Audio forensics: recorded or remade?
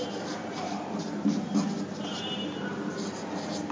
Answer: recorded